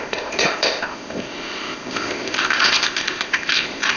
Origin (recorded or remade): remade